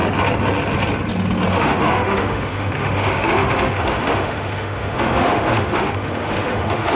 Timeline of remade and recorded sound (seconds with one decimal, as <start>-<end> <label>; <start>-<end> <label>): 0.0-1.5 recorded; 1.5-7.0 remade